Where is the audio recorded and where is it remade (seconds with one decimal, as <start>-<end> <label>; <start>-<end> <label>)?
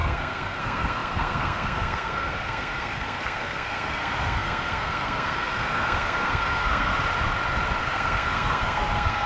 0.0-6.9 remade; 6.9-7.8 recorded; 7.8-9.3 remade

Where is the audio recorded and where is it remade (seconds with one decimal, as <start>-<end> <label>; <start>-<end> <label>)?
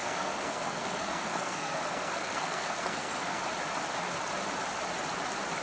0.0-3.4 remade; 3.4-5.6 recorded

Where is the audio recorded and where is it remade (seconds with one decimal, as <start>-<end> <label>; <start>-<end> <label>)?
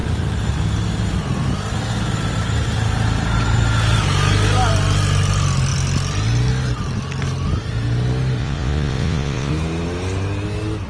0.0-8.4 recorded; 8.4-9.5 remade; 9.5-10.9 recorded